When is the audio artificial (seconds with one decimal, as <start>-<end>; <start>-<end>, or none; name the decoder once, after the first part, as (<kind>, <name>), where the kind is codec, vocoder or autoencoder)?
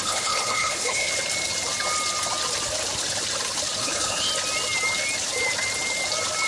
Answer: 0.0-1.1 (codec, HILCodec); 3.8-4.3